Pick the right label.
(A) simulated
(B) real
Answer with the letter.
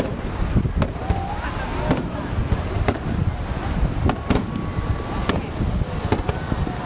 B